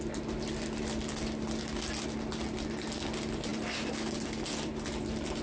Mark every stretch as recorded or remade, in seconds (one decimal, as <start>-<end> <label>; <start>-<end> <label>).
0.0-5.4 recorded